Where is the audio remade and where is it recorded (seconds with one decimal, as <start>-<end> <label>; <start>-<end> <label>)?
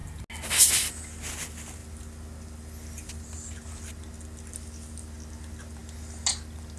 0.0-6.8 recorded